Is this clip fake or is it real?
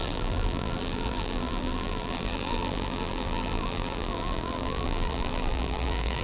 fake